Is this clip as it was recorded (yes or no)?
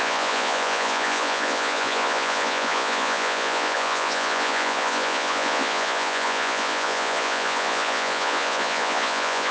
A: no